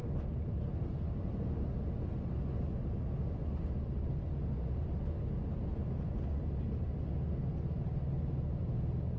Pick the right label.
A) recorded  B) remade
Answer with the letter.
A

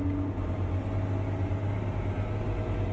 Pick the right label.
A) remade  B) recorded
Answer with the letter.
B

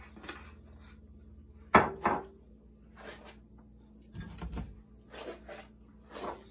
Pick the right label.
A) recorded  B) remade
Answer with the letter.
A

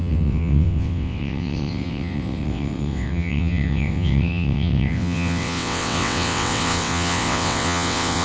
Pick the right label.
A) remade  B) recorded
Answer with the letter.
A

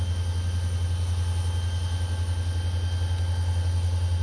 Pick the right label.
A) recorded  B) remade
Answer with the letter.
A